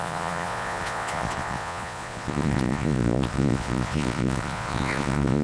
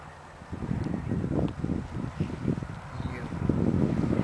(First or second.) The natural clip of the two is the second